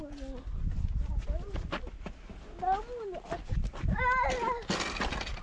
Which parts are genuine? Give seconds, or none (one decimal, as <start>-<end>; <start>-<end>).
0.0-5.4